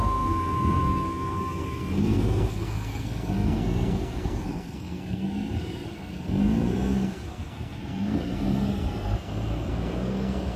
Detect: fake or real fake